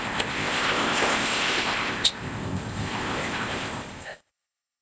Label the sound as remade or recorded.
remade